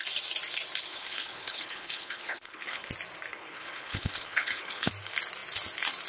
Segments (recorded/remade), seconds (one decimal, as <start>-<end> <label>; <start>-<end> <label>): 0.0-0.9 recorded; 0.9-2.9 remade; 2.9-3.3 recorded; 3.3-4.9 remade; 4.9-6.1 recorded